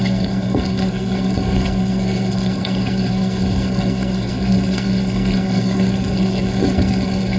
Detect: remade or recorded remade